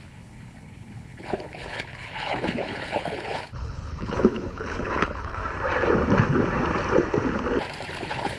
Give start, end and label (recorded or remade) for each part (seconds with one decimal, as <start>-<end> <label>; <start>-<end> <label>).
0.0-5.4 remade; 5.4-8.0 recorded; 8.0-8.4 remade